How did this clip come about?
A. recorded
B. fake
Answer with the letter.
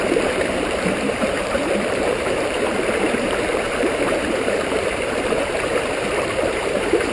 B